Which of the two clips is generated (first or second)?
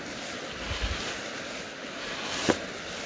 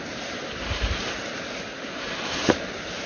second